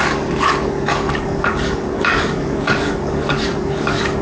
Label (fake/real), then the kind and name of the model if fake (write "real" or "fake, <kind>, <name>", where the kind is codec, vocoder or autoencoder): fake, codec, DAC